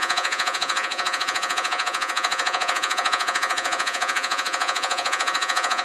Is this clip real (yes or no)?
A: no